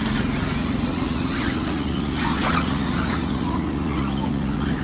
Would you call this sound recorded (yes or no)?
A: no